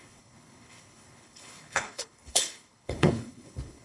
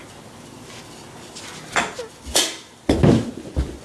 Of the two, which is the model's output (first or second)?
first